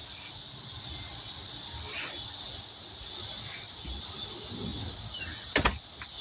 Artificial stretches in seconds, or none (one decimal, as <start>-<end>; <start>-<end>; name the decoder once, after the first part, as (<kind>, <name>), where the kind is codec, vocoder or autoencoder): none